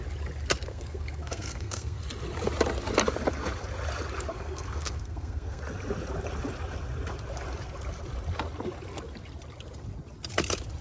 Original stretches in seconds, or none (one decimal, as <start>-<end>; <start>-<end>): 0.0-0.7; 2.0-4.3; 5.6-10.8